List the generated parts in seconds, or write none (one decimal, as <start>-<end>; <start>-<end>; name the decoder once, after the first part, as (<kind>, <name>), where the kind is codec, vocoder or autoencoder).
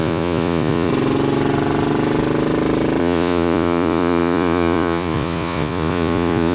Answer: 0.0-0.9 (vocoder, Vocos); 3.0-6.5